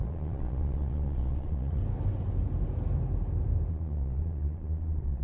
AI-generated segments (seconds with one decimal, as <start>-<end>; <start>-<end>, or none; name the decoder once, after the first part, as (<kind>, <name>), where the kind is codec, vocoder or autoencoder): 0.0-1.8 (vocoder, Vocos); 3.7-5.2